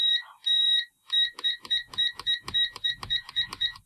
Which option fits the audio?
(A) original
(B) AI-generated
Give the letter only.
B